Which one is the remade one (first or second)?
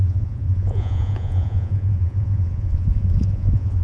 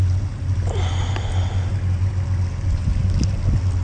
first